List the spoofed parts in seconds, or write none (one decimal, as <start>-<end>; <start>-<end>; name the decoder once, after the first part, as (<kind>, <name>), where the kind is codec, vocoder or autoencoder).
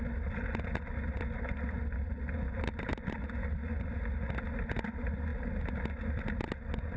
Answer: none